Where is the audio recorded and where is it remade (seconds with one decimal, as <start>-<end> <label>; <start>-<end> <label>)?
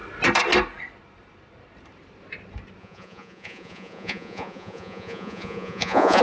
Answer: 0.0-2.8 recorded; 2.8-6.2 remade